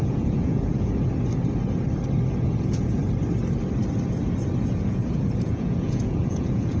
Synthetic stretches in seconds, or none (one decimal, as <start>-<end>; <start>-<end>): 0.0-1.1; 2.4-3.0; 4.6-6.8